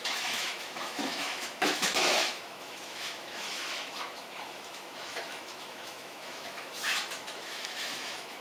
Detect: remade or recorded remade